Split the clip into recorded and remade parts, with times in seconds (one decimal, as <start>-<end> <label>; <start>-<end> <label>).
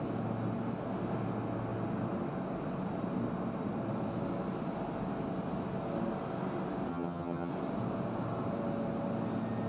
0.0-6.9 recorded; 6.9-7.5 remade; 7.5-9.7 recorded